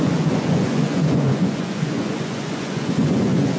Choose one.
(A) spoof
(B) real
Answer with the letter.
A